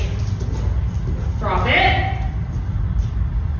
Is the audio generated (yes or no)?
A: no